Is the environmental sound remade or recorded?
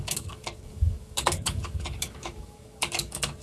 remade